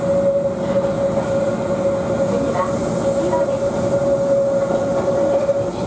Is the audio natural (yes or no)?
yes